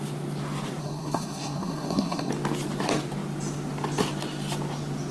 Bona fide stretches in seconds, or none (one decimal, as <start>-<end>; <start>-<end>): 0.0-0.8; 2.3-5.1